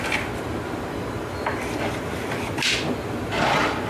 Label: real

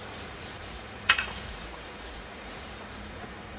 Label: fake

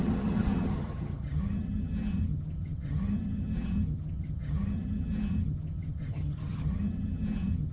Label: fake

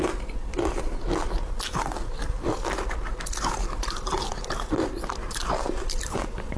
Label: fake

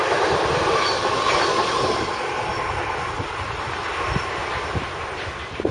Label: real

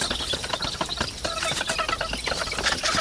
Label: real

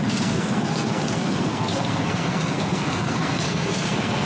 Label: fake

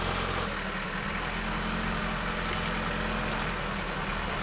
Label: real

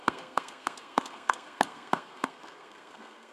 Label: fake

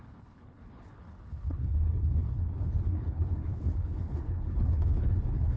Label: fake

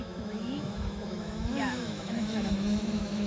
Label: fake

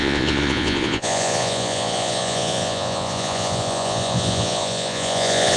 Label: fake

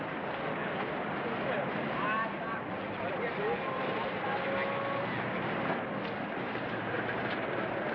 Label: real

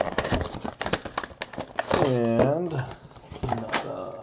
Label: real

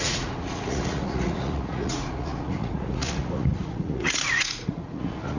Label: fake